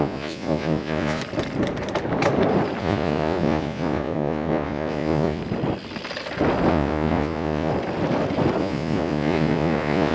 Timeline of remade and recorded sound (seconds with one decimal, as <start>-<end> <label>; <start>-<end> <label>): 0.0-1.2 remade; 1.2-2.8 recorded; 2.8-5.4 remade; 5.4-6.7 recorded; 6.7-7.7 remade; 7.7-8.6 recorded; 8.6-10.1 remade